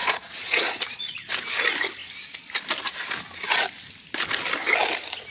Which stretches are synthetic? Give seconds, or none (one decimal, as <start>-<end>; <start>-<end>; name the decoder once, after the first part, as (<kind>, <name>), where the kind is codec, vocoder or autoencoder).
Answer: 0.0-1.3 (vocoder, Vocos)